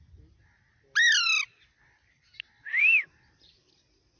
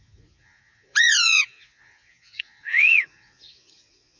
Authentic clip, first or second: first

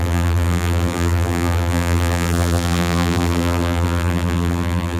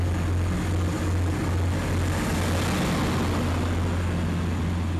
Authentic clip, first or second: second